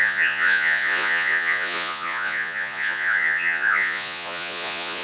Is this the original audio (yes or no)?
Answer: no